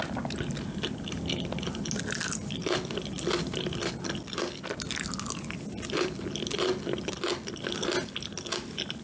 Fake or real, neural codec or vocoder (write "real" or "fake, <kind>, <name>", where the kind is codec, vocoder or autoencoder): real